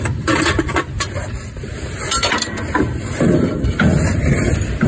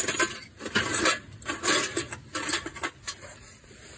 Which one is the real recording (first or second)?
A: second